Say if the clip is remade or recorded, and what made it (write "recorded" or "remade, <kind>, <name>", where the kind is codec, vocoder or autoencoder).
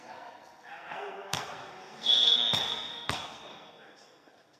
remade, codec, SNAC